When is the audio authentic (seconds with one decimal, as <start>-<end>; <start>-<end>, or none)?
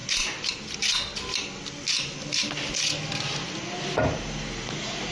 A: 0.0-5.1